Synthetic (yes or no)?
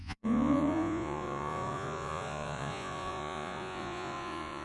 yes